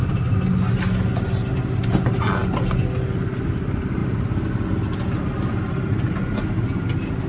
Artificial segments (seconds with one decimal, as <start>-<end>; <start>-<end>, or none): none